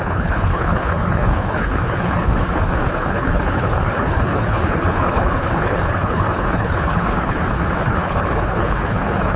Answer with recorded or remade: remade